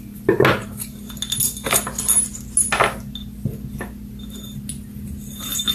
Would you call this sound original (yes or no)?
yes